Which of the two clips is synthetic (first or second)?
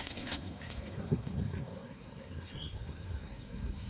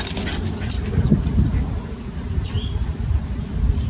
first